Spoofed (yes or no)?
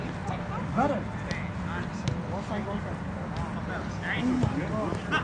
no